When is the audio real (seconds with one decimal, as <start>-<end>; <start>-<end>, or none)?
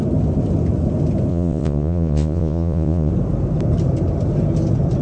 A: 0.0-1.3; 3.1-5.0